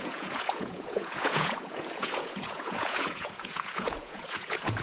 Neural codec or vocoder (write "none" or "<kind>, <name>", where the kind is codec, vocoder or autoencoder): vocoder, Vocos